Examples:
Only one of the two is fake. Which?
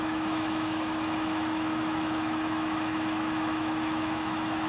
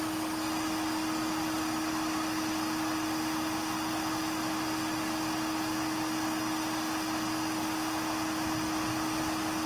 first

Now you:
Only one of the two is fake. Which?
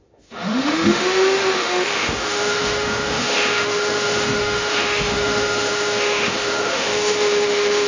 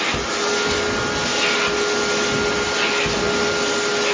first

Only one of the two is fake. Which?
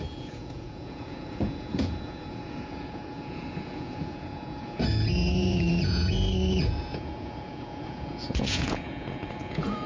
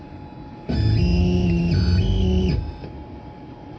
first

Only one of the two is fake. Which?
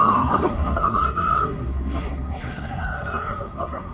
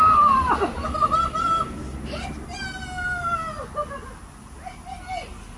first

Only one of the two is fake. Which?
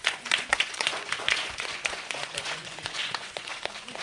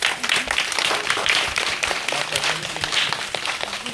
first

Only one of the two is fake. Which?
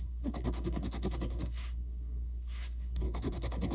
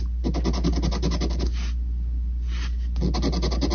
first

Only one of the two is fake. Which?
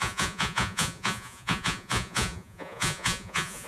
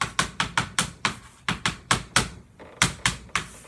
first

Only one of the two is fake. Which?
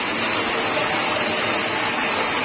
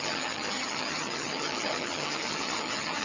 second